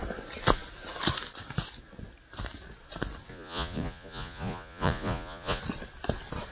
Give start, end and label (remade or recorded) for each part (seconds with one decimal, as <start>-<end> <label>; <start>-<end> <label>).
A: 0.0-3.3 recorded; 3.3-5.6 remade; 5.6-6.5 recorded